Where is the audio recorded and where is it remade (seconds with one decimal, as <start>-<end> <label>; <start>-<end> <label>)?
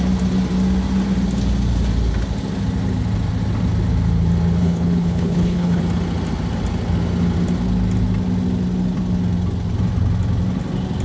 0.0-4.6 recorded; 4.6-5.8 remade; 5.8-11.0 recorded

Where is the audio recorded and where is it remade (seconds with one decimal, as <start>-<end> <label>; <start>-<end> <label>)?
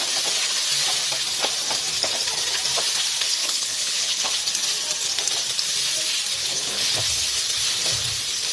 0.0-3.4 recorded; 3.4-4.3 remade; 4.3-6.4 recorded; 6.4-7.0 remade; 7.0-8.5 recorded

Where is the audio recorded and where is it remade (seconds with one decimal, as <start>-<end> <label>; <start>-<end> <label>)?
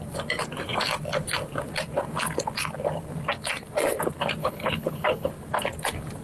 0.0-4.4 recorded; 4.4-5.3 remade; 5.3-6.2 recorded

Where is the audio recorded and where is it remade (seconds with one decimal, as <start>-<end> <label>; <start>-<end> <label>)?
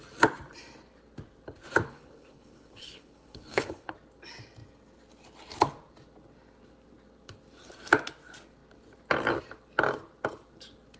0.0-1.9 recorded; 1.9-3.9 remade; 3.9-11.0 recorded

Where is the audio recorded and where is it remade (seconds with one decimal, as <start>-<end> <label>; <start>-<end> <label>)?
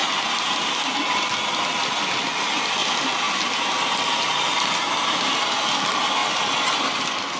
0.0-7.4 recorded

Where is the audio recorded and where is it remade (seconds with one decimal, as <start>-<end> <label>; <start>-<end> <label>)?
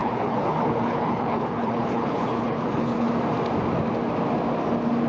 0.0-3.1 remade; 3.1-5.1 recorded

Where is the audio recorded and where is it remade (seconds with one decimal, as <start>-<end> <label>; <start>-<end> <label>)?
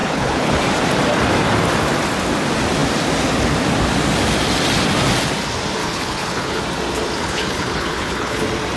0.0-0.5 remade; 0.5-5.8 recorded; 5.8-6.6 remade; 6.6-7.2 recorded; 7.2-8.4 remade; 8.4-8.8 recorded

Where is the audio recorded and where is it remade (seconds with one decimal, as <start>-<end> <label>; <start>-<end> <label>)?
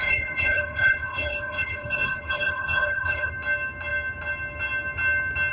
0.0-3.3 remade; 3.3-5.5 recorded